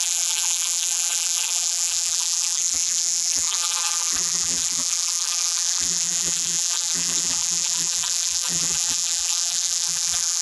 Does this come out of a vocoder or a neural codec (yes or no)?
yes